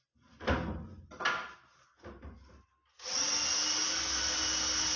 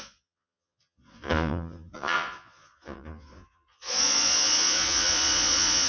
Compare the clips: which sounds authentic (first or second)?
first